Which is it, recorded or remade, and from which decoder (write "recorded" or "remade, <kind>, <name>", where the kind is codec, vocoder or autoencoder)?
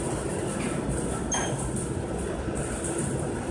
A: recorded